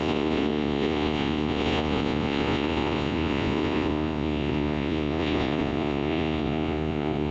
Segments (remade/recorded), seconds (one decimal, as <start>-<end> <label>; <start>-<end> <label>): 0.0-7.3 remade